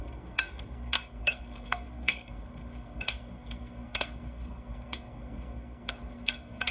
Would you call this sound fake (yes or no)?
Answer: yes